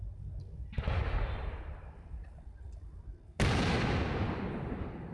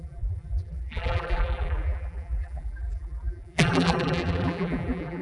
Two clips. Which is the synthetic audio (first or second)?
second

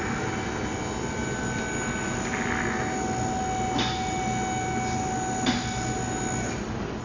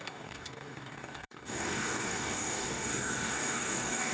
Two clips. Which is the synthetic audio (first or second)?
second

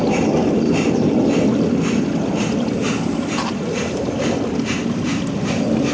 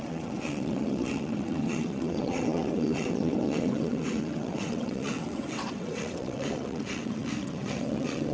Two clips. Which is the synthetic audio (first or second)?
second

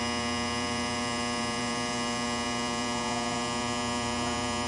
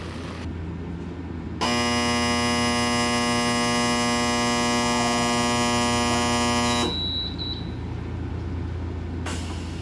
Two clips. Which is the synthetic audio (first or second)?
first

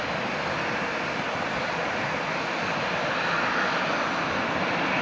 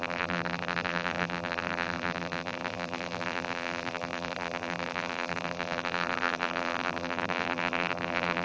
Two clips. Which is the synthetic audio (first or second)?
second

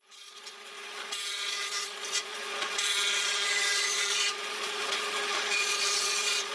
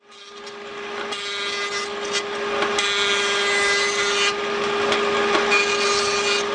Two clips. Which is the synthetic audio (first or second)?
first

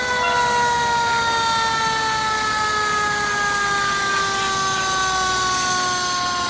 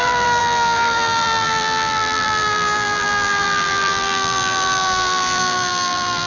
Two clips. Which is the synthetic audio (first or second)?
second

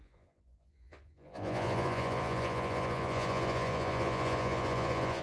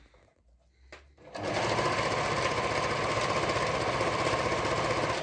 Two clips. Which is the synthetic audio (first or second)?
first